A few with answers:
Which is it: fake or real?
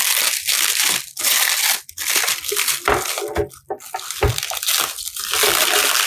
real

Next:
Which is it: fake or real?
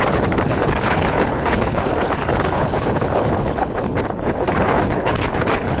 fake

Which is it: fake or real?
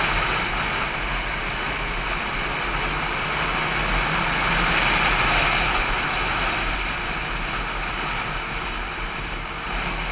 real